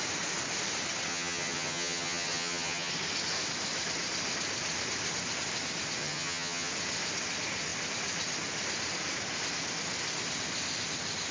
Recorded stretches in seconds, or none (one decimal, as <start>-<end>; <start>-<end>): 0.0-1.1; 2.9-6.0; 6.7-11.3